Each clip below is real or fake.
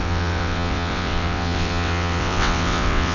fake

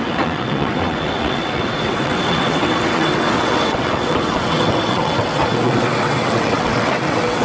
fake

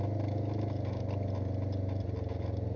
real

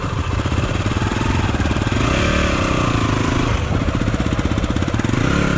real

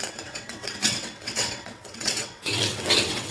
fake